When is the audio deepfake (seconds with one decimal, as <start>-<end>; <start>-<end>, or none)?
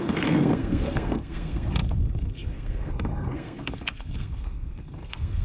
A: 0.0-5.4